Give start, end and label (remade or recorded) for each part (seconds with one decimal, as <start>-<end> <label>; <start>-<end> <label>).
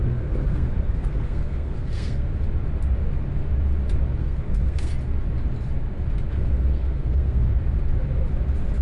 0.0-2.3 remade; 2.3-4.2 recorded; 4.2-4.9 remade; 4.9-6.3 recorded; 6.3-7.5 remade; 7.5-8.8 recorded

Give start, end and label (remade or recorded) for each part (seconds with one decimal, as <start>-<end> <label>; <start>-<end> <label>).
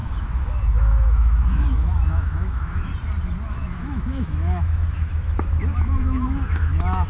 0.0-2.9 remade; 2.9-3.5 recorded; 3.5-7.1 remade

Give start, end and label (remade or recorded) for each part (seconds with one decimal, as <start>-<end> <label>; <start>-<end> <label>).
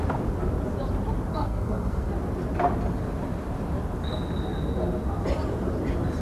0.0-1.3 recorded; 1.3-2.1 remade; 2.1-6.2 recorded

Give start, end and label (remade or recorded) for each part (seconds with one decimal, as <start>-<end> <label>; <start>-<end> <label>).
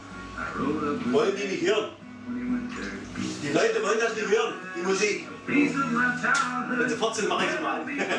0.0-1.0 remade; 1.0-3.2 recorded; 3.2-6.8 remade; 6.8-8.2 recorded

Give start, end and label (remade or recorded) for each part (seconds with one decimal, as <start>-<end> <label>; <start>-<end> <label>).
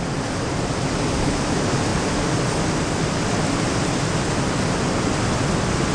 0.0-5.9 recorded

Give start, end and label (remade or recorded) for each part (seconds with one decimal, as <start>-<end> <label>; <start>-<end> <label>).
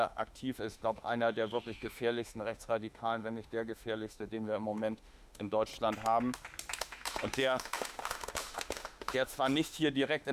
0.0-5.7 remade; 5.7-6.8 recorded; 6.8-10.3 remade